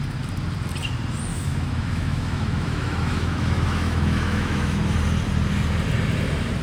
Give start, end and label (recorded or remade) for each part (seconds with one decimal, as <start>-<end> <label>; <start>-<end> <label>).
0.0-1.3 recorded; 1.3-5.0 remade; 5.0-6.6 recorded